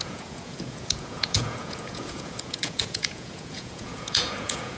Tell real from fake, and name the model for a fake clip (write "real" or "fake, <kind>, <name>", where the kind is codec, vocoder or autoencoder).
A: fake, vocoder, Vocos